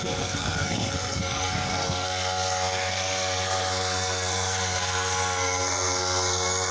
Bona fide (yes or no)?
no